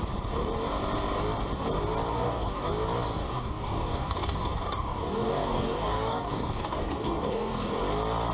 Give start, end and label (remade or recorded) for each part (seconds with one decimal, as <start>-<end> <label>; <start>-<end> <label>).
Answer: 0.0-2.1 recorded; 2.1-2.7 remade; 2.7-3.2 recorded; 3.2-7.8 remade; 7.8-8.3 recorded